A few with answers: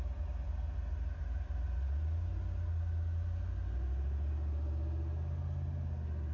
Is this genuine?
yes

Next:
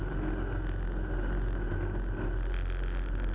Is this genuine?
yes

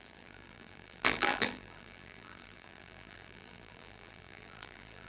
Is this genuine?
no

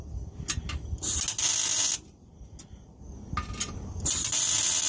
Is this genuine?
yes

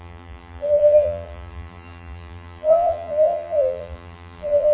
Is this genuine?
no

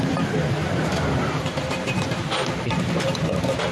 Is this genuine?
no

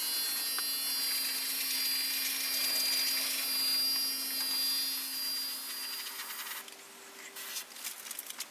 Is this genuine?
yes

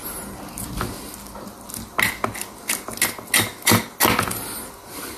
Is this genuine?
yes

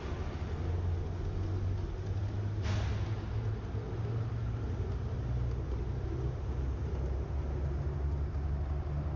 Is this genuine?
yes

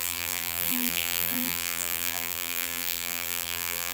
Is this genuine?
no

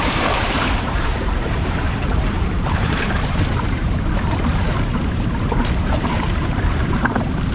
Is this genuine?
no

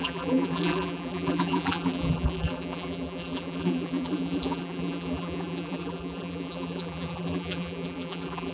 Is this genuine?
no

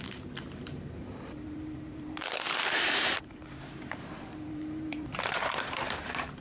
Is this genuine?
no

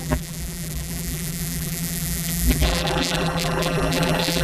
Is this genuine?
no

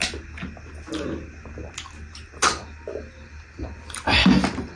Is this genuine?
yes